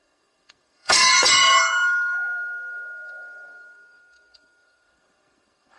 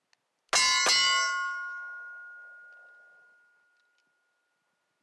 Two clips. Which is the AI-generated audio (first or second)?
first